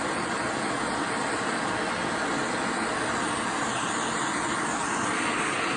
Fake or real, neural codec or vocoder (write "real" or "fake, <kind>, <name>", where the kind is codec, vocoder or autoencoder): real